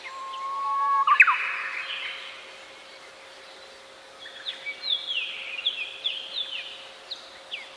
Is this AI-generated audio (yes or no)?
no